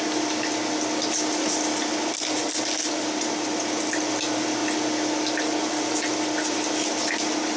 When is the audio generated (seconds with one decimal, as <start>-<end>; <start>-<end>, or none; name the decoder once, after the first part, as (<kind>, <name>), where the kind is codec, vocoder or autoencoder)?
none